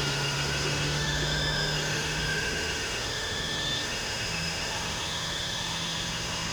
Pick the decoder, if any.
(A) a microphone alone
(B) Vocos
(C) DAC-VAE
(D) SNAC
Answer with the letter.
C